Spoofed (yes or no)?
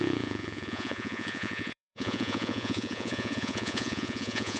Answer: yes